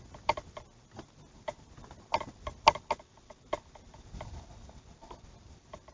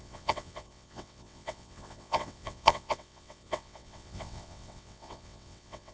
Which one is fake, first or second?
second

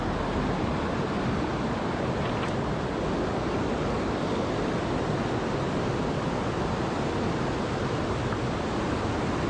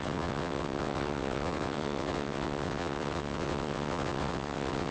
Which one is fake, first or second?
second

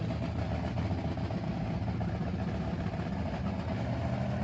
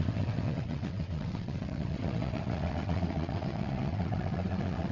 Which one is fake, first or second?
second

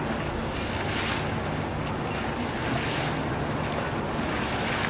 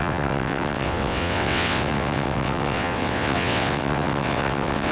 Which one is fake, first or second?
second